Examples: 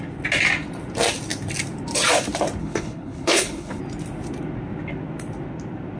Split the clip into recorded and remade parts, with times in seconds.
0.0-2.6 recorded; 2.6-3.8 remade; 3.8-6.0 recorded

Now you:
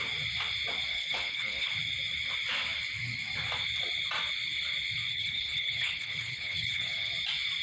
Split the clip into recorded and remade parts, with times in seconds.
0.0-0.9 recorded; 0.9-1.7 remade; 1.7-5.1 recorded; 5.1-7.1 remade; 7.1-7.6 recorded

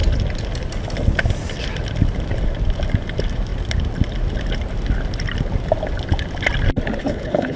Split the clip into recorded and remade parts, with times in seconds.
0.0-7.0 recorded; 7.0-7.6 remade

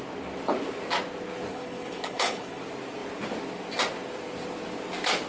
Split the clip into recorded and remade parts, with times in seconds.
0.0-1.5 recorded; 1.5-2.6 remade; 2.6-5.3 recorded